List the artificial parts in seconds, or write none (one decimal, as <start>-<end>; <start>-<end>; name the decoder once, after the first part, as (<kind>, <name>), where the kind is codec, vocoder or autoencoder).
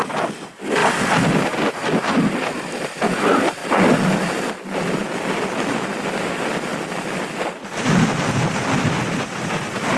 3.6-4.2 (vocoder, BigVGAN v2); 6.7-7.4